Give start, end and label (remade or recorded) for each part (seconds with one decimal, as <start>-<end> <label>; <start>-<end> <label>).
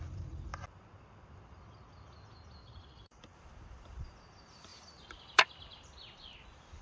0.0-2.6 recorded; 2.6-3.2 remade; 3.2-6.8 recorded